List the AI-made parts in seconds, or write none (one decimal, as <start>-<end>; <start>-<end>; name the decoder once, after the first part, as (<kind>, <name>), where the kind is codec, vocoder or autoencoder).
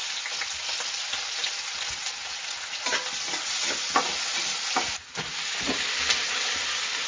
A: none